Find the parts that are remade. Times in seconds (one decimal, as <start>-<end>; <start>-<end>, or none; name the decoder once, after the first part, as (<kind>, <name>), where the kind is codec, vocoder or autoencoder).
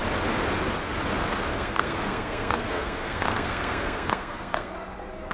1.5-4.7 (codec, SNAC)